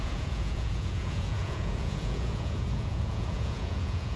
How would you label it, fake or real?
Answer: fake